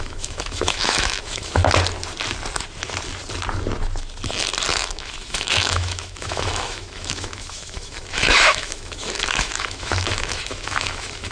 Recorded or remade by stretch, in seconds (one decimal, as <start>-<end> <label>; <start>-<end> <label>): 0.0-1.6 remade; 1.6-4.7 recorded; 4.7-11.3 remade